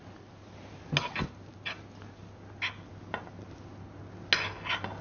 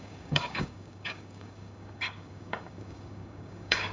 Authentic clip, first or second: first